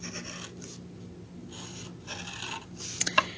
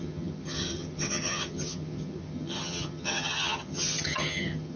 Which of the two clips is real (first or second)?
first